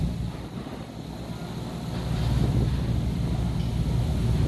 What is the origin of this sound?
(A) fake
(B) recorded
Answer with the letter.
B